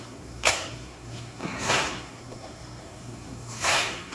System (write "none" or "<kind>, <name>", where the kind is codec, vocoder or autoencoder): codec, SNAC